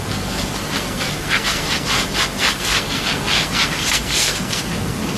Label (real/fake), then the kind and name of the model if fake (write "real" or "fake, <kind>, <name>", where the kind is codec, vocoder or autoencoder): fake, codec, SNAC